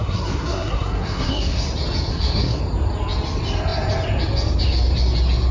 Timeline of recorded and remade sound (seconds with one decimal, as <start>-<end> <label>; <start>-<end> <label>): 0.0-1.6 remade; 1.6-2.1 recorded; 2.1-2.6 remade; 2.6-5.5 recorded